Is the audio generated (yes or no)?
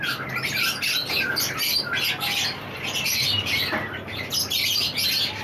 no